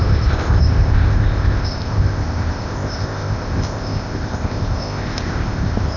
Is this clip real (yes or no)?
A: no